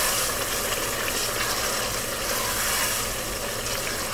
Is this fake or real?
real